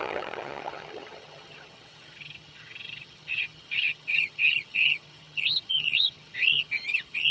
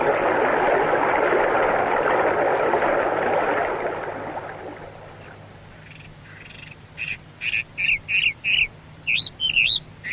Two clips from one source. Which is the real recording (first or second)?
second